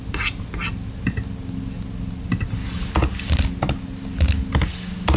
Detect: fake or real real